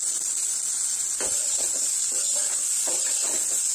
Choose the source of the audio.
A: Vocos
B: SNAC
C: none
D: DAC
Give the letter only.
C